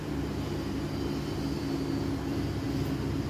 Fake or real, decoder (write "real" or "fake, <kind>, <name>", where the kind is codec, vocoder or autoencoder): real